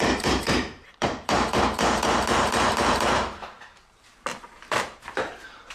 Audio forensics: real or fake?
fake